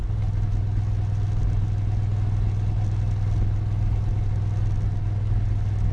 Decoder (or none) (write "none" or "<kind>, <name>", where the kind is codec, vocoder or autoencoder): none